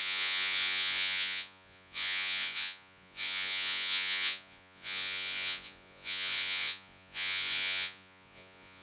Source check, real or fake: fake